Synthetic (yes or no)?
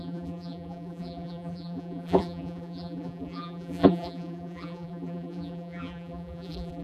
yes